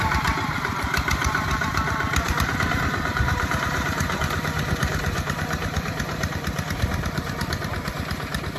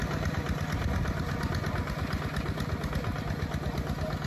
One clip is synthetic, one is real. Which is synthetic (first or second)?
first